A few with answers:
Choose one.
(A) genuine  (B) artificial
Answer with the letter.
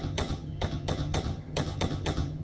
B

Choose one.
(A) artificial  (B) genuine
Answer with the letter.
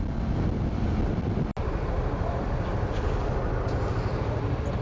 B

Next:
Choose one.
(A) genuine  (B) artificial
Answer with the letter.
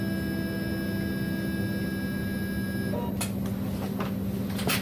A